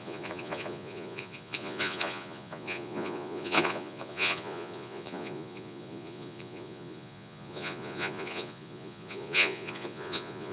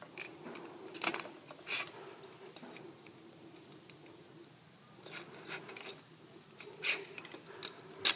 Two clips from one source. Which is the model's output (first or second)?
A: first